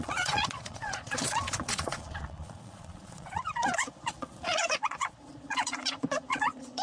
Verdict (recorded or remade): remade